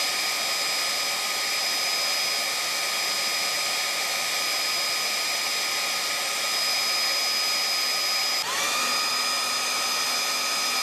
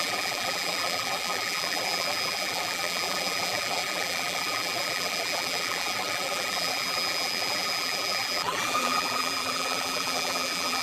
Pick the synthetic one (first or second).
second